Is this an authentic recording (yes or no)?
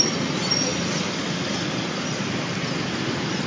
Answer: yes